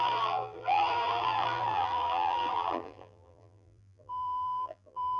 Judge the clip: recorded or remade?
remade